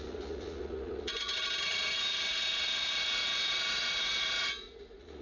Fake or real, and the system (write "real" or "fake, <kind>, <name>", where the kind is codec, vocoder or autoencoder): fake, vocoder, Vocos